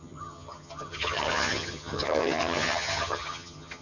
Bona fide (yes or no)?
no